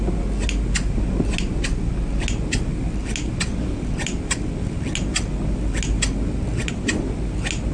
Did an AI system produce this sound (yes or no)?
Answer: no